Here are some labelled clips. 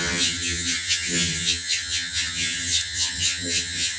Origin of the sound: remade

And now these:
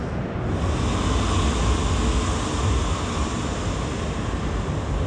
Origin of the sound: recorded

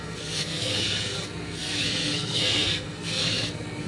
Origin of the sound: remade